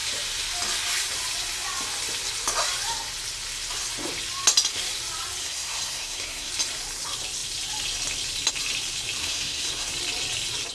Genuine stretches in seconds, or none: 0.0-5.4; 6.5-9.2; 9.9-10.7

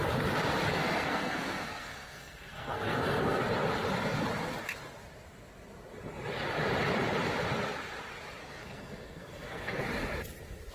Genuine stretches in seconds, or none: 0.0-0.7; 3.4-8.4; 9.8-10.7

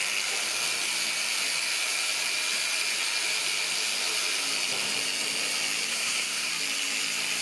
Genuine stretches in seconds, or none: 0.0-5.9; 6.5-7.4

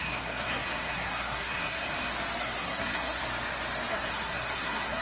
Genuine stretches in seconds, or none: 1.9-2.4; 3.2-3.9

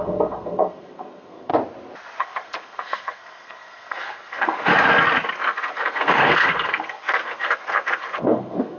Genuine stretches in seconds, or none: 1.5-2.2; 4.7-5.3

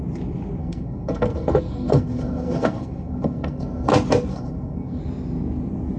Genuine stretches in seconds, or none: 0.0-0.6; 3.9-4.3; 5.0-6.0